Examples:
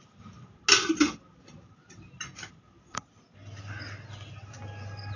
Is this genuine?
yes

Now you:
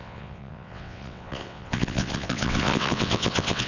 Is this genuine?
no